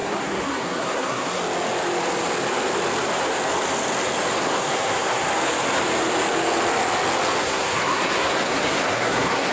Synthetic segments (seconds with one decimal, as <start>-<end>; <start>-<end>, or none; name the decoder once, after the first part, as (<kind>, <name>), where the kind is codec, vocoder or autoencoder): 0.0-1.4 (codec, SNAC); 4.4-5.3; 7.4-9.5